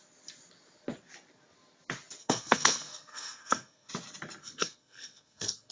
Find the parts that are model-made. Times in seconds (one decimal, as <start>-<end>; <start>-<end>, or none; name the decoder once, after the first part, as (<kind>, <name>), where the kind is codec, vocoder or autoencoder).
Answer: 2.2-3.9 (codec, SNAC); 4.4-5.7